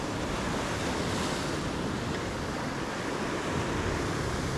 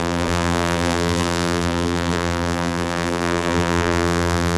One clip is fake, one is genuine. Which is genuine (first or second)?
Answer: first